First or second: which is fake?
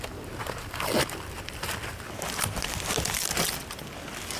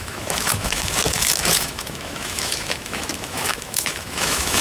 second